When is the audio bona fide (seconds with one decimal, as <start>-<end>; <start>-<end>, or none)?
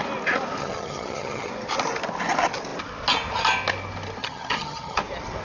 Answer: 0.0-0.6; 1.5-4.2; 5.0-5.4